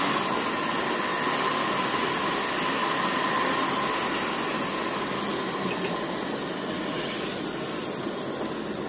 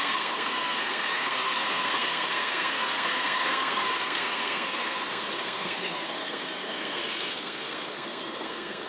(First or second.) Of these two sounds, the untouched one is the first